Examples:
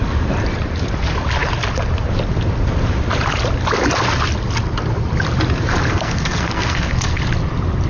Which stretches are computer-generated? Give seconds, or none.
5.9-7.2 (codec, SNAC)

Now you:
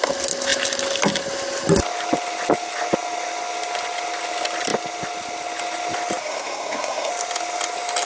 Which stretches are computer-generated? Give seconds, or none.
6.2-7.1 (codec, SNAC)